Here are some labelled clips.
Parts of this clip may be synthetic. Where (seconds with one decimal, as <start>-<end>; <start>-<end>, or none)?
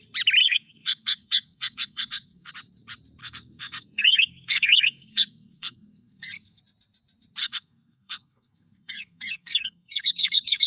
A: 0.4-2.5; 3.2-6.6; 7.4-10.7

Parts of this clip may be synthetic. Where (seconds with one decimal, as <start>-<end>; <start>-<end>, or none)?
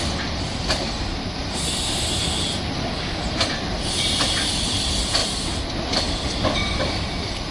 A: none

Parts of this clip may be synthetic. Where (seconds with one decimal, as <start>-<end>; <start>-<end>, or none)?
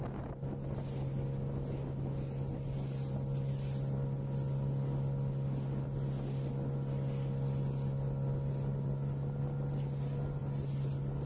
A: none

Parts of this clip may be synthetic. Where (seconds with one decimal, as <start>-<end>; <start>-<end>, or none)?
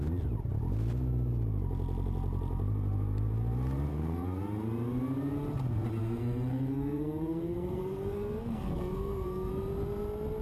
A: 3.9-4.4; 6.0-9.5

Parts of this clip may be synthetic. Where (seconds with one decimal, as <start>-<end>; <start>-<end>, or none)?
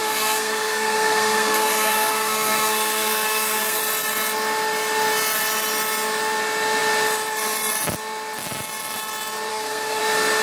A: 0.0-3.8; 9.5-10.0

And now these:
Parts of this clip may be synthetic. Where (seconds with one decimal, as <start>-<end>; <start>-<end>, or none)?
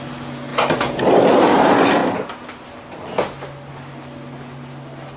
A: none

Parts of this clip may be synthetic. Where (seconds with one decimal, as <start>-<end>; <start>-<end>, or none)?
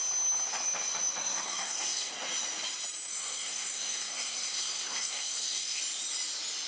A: 1.2-2.1; 3.1-5.8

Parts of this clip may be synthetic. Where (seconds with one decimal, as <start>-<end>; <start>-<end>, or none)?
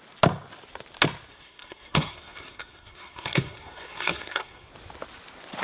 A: 1.3-4.7